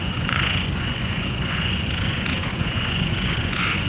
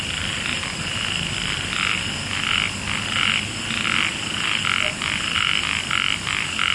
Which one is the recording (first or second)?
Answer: second